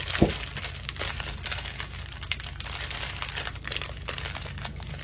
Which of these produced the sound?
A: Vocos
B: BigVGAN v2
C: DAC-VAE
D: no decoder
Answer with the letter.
D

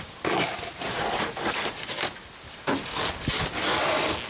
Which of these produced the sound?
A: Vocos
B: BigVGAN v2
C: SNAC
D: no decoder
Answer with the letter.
D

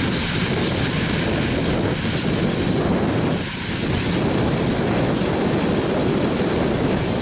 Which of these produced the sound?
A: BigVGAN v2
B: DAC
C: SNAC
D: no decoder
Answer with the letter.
D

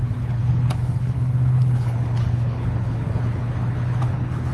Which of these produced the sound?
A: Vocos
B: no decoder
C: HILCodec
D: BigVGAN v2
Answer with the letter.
C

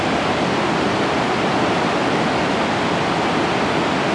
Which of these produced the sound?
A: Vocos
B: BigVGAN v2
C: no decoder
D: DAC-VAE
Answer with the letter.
C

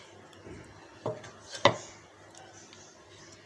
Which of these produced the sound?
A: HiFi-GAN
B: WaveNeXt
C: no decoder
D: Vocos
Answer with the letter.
C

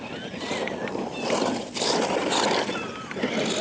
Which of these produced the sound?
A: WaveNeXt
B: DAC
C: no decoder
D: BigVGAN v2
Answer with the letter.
C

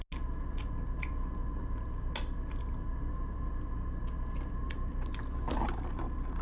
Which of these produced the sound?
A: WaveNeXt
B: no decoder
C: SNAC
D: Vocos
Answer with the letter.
B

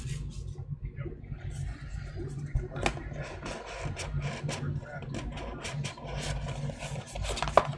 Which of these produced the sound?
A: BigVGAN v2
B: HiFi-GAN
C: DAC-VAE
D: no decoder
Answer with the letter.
D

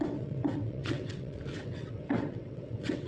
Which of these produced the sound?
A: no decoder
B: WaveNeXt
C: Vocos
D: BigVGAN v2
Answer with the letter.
B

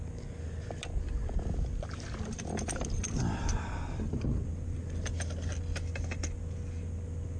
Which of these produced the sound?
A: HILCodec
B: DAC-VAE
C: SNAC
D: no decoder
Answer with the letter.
D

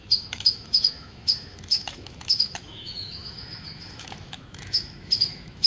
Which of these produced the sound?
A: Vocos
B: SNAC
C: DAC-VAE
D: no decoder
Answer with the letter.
C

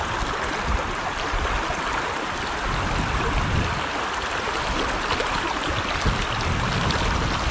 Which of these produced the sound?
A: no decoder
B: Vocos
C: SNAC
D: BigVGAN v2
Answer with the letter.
A